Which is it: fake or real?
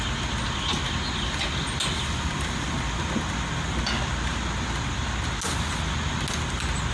real